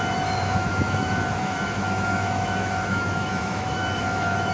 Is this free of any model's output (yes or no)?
no